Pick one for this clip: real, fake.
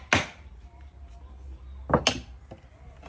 real